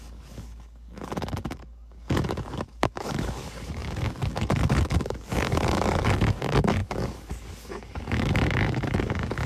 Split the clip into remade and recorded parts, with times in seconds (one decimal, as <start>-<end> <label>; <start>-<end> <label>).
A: 0.0-9.5 remade